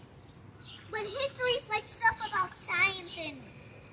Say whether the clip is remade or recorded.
recorded